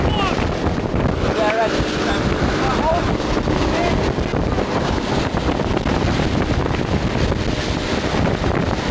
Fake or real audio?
real